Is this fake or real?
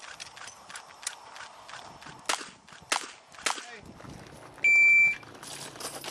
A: real